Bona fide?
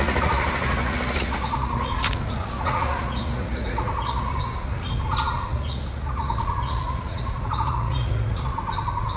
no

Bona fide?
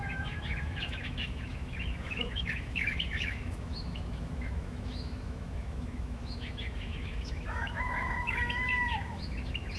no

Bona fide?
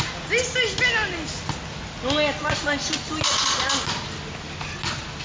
yes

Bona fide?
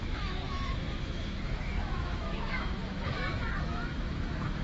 no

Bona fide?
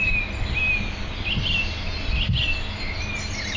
yes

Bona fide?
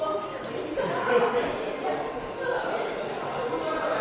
yes